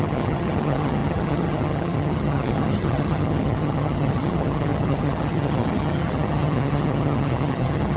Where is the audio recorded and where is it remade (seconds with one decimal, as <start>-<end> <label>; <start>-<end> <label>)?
0.0-8.0 remade